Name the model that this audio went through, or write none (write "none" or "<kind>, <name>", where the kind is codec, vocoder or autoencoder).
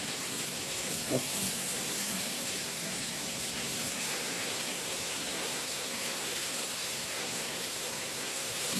codec, SNAC